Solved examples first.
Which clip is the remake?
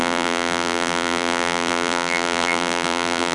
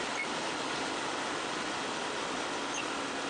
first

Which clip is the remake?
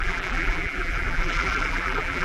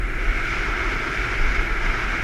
first